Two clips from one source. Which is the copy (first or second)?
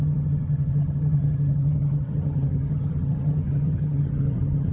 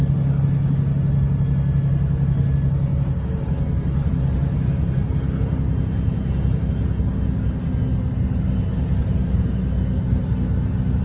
first